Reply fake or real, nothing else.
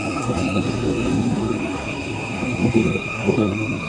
fake